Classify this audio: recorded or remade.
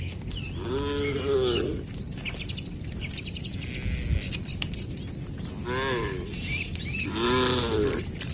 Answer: recorded